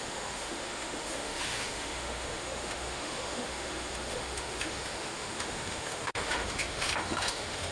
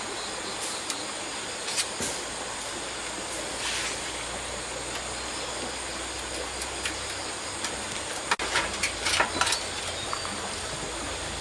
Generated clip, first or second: first